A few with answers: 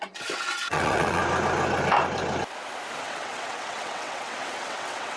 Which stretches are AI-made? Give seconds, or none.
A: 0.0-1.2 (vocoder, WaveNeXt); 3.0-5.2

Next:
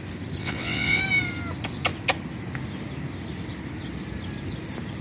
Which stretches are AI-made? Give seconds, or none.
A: 0.4-1.0 (vocoder, WaveNeXt)

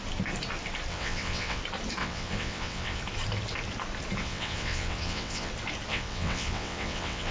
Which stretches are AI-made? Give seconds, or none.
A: 0.9-1.6 (vocoder, WaveNeXt); 2.0-3.0; 4.2-5.5; 5.9-7.3